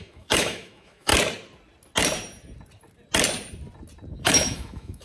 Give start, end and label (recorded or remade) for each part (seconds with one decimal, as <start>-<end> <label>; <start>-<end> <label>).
0.0-1.1 remade; 1.1-4.1 recorded; 4.1-5.0 remade